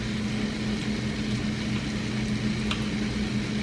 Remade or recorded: recorded